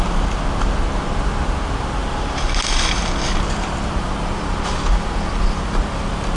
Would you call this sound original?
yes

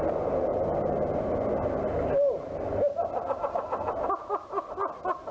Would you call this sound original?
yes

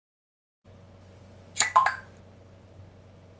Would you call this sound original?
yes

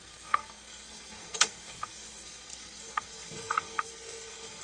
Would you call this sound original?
no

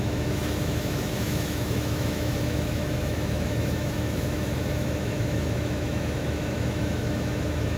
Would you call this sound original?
no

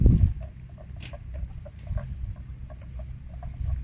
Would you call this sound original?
no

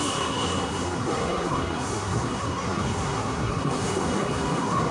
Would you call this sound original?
no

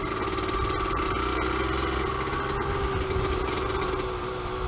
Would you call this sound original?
yes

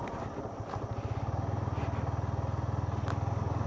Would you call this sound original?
yes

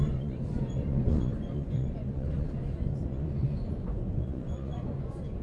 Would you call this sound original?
no